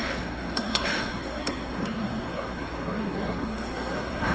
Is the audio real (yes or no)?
no